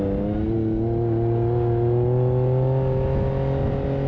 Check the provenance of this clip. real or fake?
real